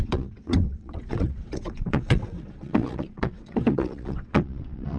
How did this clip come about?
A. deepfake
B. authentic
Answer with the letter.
A